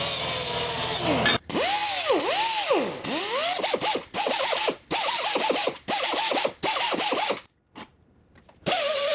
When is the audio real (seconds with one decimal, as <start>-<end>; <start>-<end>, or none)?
0.0-3.8; 6.1-7.9